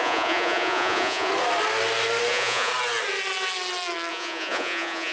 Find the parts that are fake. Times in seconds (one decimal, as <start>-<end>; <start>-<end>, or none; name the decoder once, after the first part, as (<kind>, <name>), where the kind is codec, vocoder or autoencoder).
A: 0.0-1.3 (vocoder, Vocos); 2.3-2.7; 4.1-5.1